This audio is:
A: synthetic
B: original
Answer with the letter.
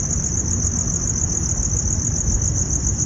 B